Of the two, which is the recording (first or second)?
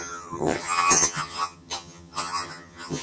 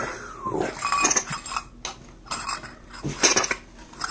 second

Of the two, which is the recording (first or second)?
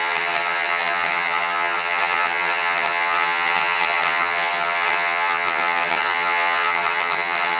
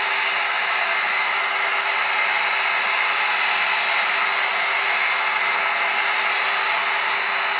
second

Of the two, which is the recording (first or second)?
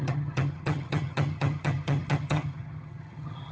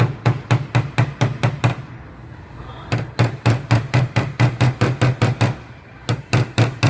second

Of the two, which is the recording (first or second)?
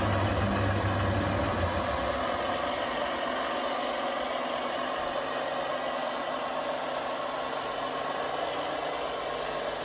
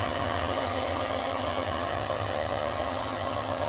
first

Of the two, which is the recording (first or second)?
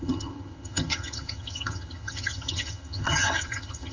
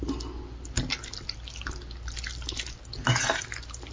second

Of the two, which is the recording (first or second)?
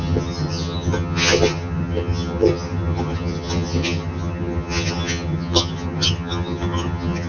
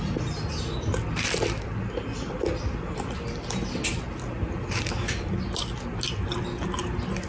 second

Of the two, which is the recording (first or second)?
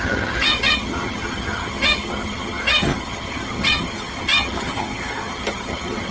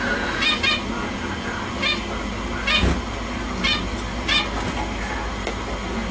second